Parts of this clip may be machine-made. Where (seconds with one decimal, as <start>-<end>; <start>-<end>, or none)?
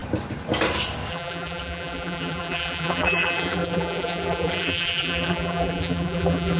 1.1-6.6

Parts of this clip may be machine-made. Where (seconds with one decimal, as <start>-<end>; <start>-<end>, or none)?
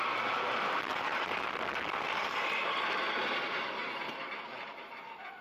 0.9-3.2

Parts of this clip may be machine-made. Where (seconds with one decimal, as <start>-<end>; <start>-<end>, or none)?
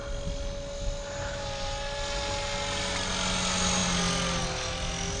none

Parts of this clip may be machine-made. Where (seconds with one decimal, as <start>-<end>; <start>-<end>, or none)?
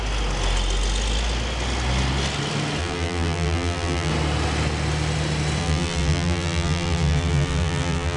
2.8-4.1; 5.6-8.2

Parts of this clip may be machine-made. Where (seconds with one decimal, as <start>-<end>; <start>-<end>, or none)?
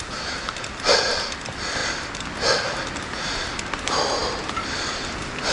none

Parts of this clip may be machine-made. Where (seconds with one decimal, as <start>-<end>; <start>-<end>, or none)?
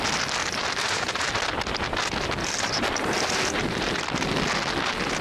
0.4-1.4; 2.4-2.9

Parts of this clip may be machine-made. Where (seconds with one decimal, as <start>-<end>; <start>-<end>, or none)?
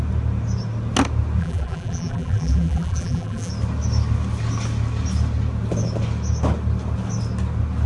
1.4-3.5